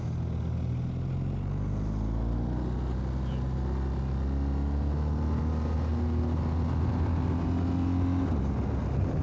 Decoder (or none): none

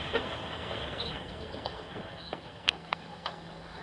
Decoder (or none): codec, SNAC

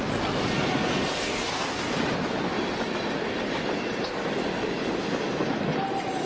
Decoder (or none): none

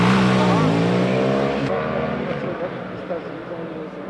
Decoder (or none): none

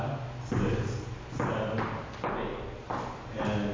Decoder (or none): none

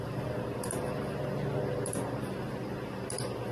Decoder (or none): none